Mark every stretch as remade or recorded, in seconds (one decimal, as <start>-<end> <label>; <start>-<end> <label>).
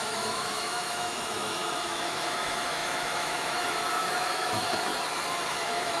0.0-4.9 remade; 4.9-5.5 recorded; 5.5-6.0 remade